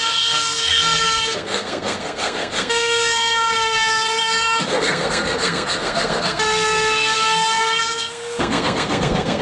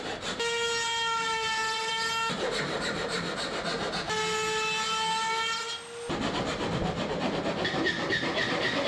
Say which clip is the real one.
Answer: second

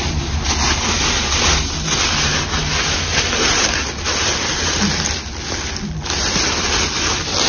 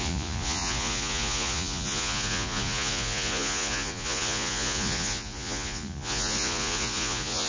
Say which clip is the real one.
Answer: first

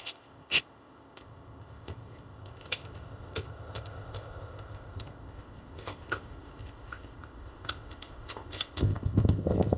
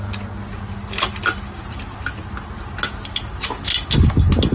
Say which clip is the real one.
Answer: second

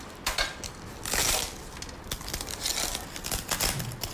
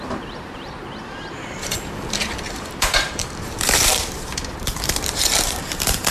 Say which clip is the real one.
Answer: first